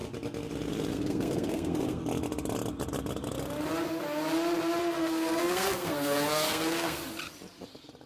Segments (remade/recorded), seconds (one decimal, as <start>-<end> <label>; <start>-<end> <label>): 0.0-0.9 recorded; 0.9-2.0 remade; 2.0-4.8 recorded; 4.8-7.0 remade; 7.0-8.1 recorded